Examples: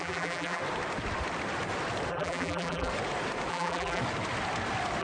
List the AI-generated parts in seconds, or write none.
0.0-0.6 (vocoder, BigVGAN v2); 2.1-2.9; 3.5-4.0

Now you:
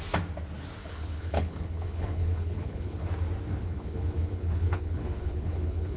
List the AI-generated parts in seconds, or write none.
0.8-3.1 (codec, HILCodec); 3.6-6.0

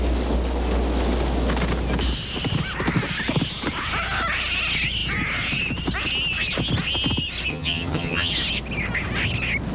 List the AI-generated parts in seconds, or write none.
7.5-8.3 (vocoder, HiFi-GAN)

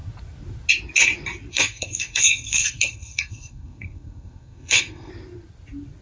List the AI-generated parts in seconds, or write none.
1.5-5.1 (codec, SNAC)

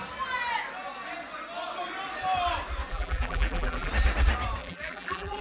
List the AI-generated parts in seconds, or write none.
2.9-3.9 (vocoder, BigVGAN v2); 4.6-5.4

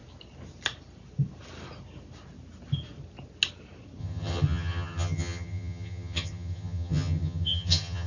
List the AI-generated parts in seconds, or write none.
4.0-8.1 (vocoder, HiFi-GAN)